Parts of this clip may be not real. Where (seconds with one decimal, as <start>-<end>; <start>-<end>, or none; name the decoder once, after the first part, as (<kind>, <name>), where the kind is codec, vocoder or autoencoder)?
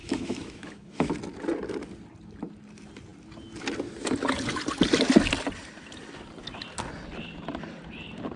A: 0.0-1.1 (autoencoder, DAC-VAE)